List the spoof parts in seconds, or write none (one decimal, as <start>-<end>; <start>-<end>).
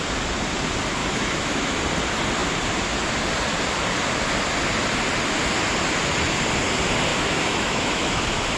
1.0-1.8; 7.1-8.2